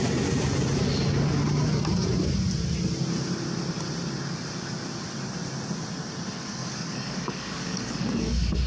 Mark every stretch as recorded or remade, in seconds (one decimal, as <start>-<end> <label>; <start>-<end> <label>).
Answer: 0.0-6.6 recorded; 6.6-8.7 remade